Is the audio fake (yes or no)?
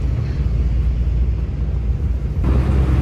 no